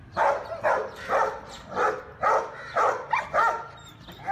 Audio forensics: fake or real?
real